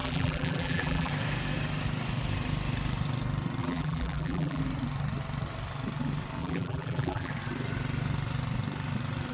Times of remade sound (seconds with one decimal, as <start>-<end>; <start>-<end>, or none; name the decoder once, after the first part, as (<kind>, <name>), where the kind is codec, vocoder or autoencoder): 0.0-1.1 (vocoder, BigVGAN v2); 3.6-4.6; 6.4-7.3

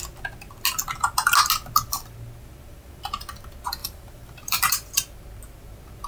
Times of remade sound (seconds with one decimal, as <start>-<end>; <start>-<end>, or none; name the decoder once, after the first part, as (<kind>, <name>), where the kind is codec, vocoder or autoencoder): 3.8-4.7 (vocoder, BigVGAN v2)

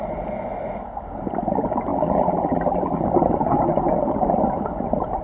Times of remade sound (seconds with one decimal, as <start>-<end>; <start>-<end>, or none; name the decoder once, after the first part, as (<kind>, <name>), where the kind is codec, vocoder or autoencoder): 1.9-3.0 (vocoder, BigVGAN v2)

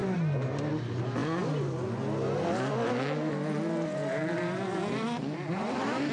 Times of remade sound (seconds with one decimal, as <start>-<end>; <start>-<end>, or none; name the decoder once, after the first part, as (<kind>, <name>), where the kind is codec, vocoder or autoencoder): 0.0-0.7 (vocoder, BigVGAN v2); 4.0-6.1

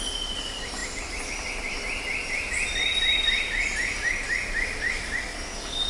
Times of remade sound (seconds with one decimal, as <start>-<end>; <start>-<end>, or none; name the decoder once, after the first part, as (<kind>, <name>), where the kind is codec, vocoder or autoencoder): 0.0-0.8 (vocoder, BigVGAN v2); 2.4-2.9; 3.7-5.9

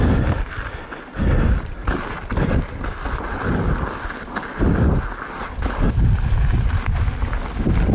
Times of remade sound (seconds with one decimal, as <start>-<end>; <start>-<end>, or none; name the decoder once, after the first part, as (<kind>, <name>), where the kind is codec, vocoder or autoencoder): 1.8-2.9 (vocoder, BigVGAN v2)

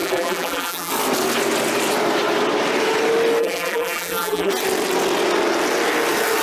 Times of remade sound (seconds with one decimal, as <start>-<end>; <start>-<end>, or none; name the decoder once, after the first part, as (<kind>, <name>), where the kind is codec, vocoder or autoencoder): 0.0-0.9 (vocoder, BigVGAN v2); 3.4-4.5

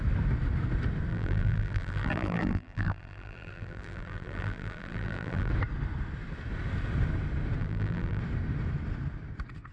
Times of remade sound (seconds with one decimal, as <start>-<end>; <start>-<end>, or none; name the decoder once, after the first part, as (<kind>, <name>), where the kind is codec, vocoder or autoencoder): 1.1-5.5 (vocoder, BigVGAN v2); 7.6-8.2